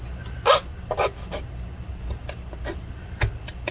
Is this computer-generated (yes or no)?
no